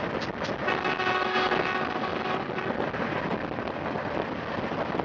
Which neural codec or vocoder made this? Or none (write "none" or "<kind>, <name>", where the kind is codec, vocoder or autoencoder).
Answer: none